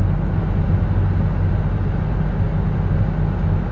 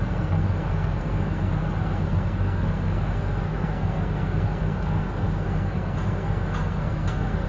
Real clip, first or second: first